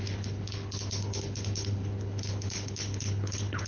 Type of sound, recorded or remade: remade